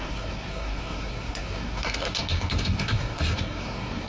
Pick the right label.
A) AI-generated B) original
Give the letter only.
A